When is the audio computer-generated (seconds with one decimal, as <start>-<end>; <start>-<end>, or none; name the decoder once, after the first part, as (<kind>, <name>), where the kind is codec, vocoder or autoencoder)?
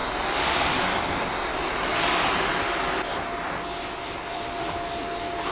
none